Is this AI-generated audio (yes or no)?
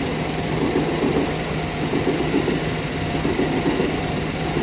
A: yes